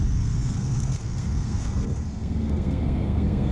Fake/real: fake